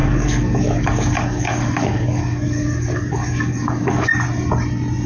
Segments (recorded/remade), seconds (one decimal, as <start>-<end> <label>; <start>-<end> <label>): 0.0-4.1 remade; 4.1-5.1 recorded